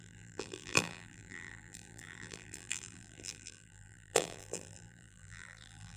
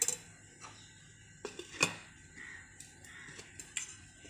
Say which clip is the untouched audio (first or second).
second